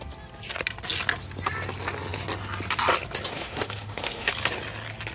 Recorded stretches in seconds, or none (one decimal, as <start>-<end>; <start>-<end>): 0.0-3.3; 4.3-5.1